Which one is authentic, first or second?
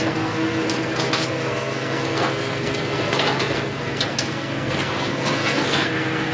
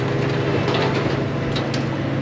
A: second